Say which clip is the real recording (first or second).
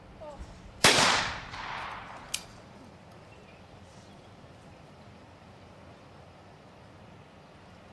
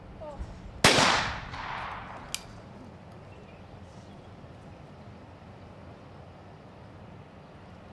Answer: second